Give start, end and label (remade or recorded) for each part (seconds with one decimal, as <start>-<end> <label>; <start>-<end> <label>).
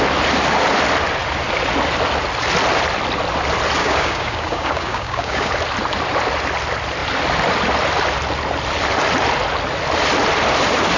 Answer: 0.0-3.8 recorded; 3.8-5.5 remade; 5.5-11.0 recorded